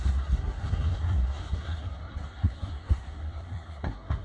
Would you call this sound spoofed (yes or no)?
yes